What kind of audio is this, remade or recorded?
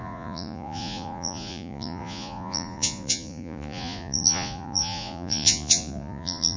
remade